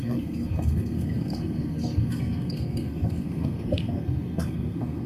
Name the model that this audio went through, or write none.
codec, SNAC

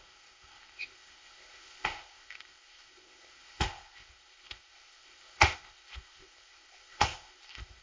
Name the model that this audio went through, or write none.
codec, ZipCodec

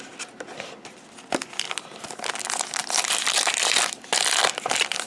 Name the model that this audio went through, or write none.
none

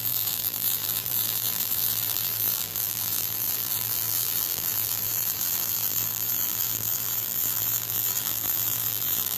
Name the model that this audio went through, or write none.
vocoder, BigVGAN v2